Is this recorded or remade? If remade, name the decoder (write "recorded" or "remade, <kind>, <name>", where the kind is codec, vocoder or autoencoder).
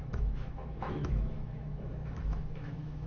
remade, autoencoder, DAC-VAE